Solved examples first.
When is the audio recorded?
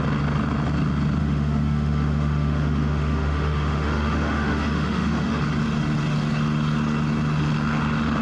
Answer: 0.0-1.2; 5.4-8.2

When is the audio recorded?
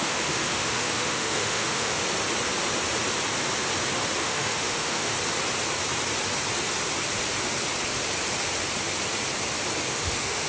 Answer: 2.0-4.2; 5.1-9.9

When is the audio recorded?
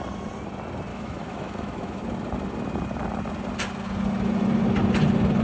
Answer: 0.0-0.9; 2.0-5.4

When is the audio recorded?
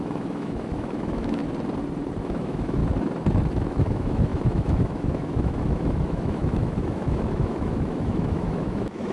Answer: 1.4-2.2; 2.8-3.5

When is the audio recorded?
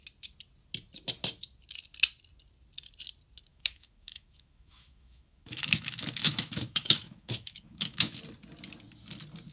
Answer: 0.0-3.5; 8.2-9.5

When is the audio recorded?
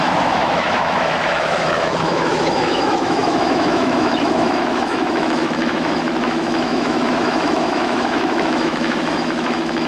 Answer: none